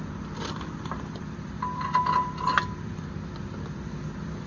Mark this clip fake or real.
fake